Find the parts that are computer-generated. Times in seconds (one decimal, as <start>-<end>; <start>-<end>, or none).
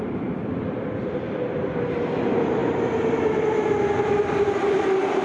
none